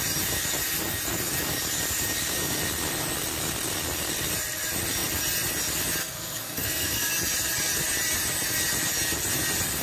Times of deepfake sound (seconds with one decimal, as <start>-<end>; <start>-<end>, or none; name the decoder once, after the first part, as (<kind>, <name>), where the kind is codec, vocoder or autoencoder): 6.0-7.1 (codec, SNAC)